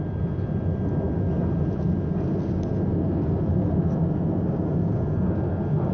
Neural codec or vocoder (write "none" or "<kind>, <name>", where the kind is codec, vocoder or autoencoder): none